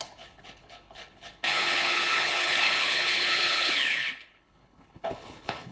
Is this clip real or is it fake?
fake